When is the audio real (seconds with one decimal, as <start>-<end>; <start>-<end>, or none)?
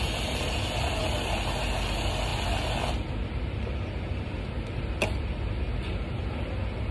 0.0-6.9